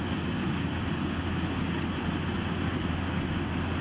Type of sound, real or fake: real